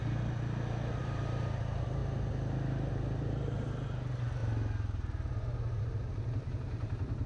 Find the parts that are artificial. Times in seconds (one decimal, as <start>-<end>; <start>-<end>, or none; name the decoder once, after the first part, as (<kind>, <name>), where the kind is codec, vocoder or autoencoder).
1.0-2.0 (vocoder, BigVGAN v2); 2.9-4.4; 5.8-7.3

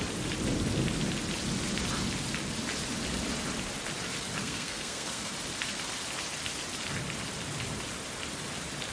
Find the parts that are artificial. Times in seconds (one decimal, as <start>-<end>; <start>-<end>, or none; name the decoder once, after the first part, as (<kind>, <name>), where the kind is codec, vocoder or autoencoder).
4.4-5.3 (codec, SNAC)

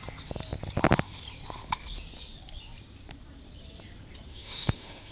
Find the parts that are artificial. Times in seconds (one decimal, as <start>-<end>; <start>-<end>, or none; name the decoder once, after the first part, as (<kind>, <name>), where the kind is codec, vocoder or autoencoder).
4.3-5.1 (autoencoder, DAC-VAE)

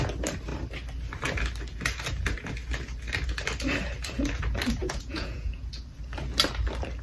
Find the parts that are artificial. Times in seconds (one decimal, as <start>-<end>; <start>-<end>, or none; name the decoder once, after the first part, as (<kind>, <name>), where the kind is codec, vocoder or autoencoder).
4.8-5.7 (vocoder, Vocos)

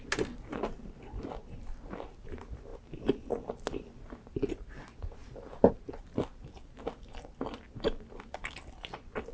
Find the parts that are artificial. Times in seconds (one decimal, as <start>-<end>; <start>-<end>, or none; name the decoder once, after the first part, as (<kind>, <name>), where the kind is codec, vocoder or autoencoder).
none

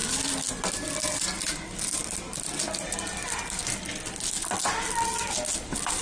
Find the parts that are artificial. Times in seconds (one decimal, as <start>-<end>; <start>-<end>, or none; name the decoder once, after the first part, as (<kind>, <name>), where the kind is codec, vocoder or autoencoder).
none

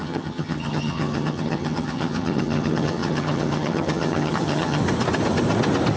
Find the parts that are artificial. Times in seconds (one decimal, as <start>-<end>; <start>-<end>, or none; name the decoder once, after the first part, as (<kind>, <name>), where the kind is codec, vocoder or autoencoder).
0.0-4.8 (vocoder, HiFi-GAN)

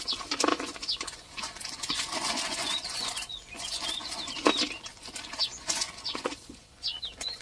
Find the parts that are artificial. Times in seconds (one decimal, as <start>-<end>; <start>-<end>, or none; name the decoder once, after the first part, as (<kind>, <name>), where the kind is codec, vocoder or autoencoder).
0.5-4.2 (vocoder, Vocos); 4.9-7.4